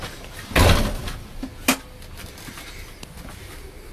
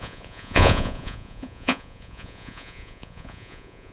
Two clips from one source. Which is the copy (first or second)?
second